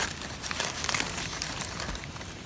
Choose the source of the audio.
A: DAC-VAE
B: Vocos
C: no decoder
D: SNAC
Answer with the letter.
C